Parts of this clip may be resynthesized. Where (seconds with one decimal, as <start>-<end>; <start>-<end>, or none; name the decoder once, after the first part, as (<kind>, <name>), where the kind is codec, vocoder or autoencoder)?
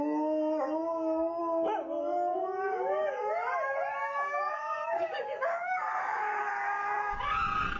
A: 2.3-3.3 (codec, DAC); 4.0-7.2